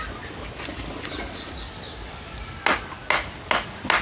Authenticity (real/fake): real